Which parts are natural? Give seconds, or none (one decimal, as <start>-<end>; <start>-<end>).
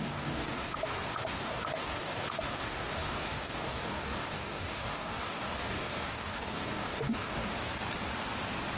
7.5-8.8